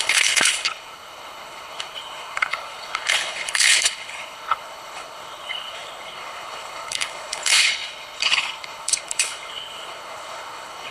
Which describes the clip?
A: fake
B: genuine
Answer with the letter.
A